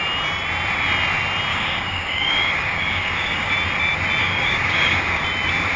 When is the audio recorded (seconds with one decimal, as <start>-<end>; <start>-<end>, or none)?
0.0-1.5; 3.5-4.2; 5.2-5.8